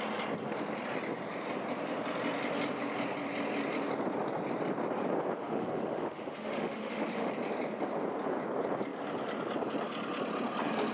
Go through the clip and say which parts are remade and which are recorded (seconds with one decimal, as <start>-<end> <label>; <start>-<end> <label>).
0.0-5.4 recorded; 5.4-7.3 remade; 7.3-10.9 recorded